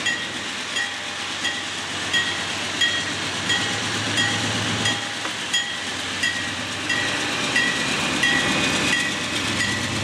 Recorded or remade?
recorded